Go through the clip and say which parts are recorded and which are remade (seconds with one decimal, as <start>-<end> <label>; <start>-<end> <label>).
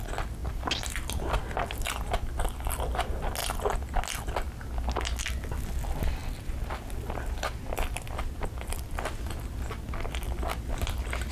0.0-11.3 recorded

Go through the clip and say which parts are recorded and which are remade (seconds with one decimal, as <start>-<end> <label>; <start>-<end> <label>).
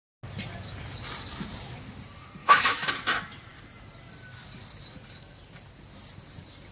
0.0-2.4 recorded; 2.4-2.9 remade; 2.9-6.7 recorded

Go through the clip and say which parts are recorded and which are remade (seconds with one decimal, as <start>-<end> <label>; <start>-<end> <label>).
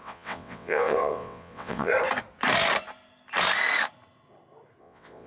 0.0-1.9 remade; 1.9-4.8 recorded; 4.8-5.3 remade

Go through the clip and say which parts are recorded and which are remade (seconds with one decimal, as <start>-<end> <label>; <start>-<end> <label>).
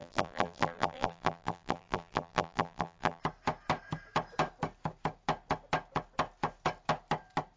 0.0-3.2 remade; 3.2-7.6 recorded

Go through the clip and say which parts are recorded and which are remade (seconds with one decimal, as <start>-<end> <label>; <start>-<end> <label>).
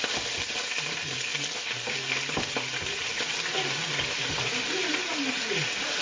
0.0-6.0 recorded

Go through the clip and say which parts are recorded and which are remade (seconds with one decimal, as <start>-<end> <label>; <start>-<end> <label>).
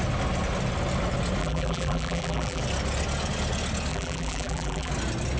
0.0-1.4 recorded; 1.4-2.6 remade; 2.6-3.9 recorded; 3.9-4.9 remade; 4.9-5.4 recorded